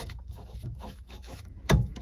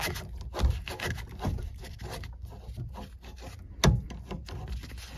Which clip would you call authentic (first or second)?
second